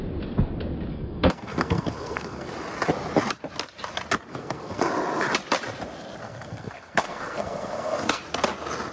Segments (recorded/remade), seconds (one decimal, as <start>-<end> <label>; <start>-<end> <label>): 0.0-0.9 recorded; 0.9-2.5 remade; 2.5-4.3 recorded; 4.3-4.9 remade; 4.9-6.2 recorded; 6.2-8.2 remade; 8.2-8.9 recorded